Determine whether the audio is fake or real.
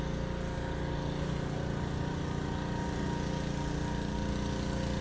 real